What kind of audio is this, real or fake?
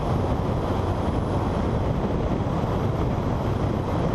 real